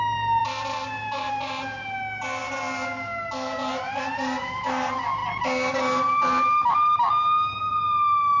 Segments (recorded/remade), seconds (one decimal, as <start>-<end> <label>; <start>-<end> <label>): 0.0-8.4 recorded